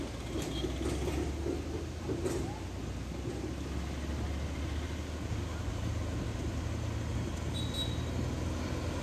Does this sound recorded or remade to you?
recorded